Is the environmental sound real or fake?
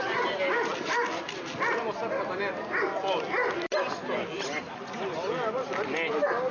real